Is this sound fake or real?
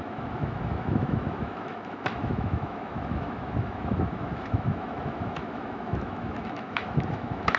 fake